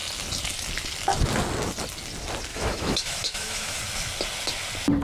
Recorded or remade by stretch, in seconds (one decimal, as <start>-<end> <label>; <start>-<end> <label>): 0.0-2.5 recorded; 2.5-3.8 remade; 3.8-5.0 recorded

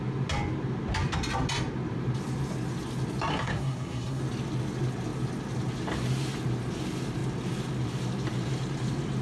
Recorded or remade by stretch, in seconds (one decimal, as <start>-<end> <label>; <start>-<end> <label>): 0.0-3.3 recorded; 3.3-4.2 remade; 4.2-9.2 recorded

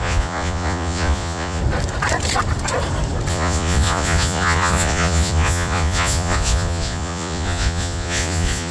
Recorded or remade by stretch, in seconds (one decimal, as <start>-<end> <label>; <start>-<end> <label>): 0.0-1.6 remade; 1.6-3.3 recorded; 3.3-8.7 remade

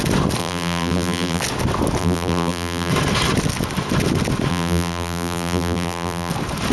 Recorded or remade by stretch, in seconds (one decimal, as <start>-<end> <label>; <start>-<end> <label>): 0.0-0.4 recorded; 0.4-1.4 remade; 1.4-2.0 recorded; 2.0-2.9 remade; 2.9-4.5 recorded; 4.5-6.3 remade; 6.3-6.7 recorded

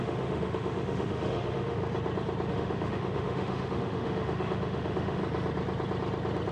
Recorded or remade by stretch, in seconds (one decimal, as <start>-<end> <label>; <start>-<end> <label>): 0.0-1.8 remade; 1.8-2.5 recorded; 2.5-5.2 remade; 5.2-6.5 recorded